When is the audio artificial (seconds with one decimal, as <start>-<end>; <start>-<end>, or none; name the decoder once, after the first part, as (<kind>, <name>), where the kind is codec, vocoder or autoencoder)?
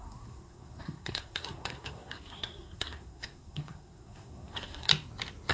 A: 0.0-4.9 (codec, SNAC)